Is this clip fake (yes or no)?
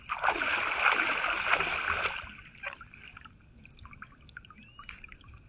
no